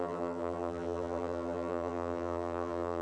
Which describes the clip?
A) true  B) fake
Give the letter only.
B